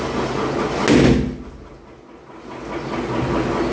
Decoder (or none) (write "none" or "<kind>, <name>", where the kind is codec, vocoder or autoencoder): none